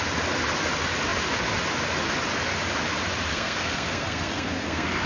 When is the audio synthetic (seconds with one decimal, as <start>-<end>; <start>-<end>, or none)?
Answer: 3.3-5.1